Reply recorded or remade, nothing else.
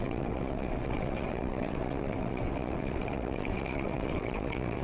remade